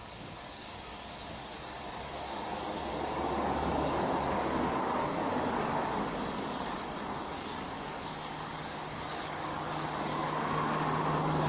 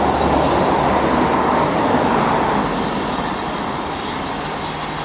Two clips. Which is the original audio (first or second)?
second